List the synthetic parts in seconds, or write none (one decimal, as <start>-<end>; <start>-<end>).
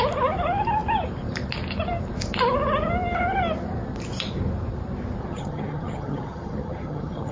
5.2-7.3